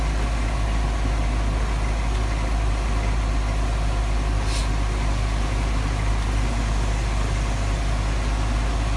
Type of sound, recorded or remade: recorded